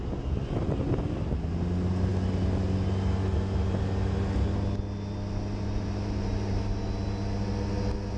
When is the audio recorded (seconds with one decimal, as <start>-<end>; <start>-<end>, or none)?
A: 0.0-8.2